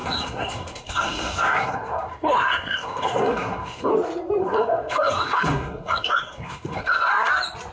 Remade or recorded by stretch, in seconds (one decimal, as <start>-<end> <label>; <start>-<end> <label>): 0.0-3.9 remade; 3.9-4.4 recorded; 4.4-7.3 remade; 7.3-7.7 recorded